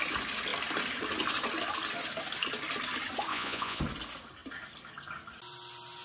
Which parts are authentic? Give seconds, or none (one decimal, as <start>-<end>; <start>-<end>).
0.0-3.3; 3.8-6.0